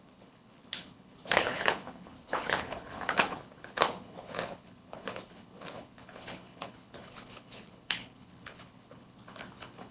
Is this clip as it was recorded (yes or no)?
no